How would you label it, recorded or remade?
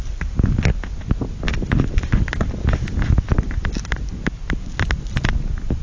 recorded